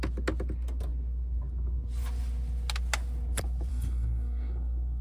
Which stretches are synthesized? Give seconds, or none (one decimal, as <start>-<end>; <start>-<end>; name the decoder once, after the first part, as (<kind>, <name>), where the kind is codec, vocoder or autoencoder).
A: 3.7-5.0 (codec, SNAC)